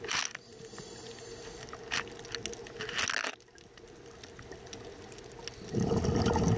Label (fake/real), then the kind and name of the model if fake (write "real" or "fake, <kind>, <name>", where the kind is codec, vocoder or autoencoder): real